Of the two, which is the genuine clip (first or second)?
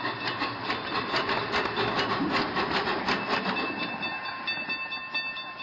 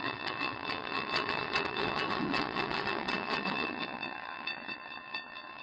first